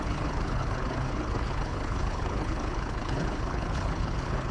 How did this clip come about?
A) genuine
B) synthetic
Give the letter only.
B